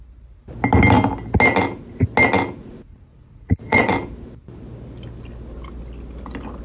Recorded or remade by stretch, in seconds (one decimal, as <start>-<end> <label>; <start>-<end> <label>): 0.0-2.6 recorded; 2.6-3.9 remade; 3.9-6.6 recorded